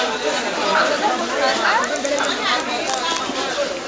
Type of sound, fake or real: real